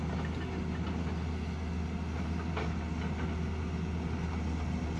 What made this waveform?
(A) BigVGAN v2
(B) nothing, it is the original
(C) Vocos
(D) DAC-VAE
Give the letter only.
B